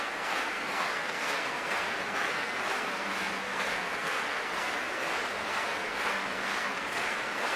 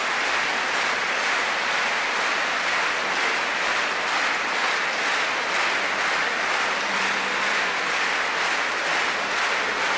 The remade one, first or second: first